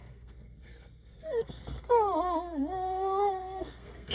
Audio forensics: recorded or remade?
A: remade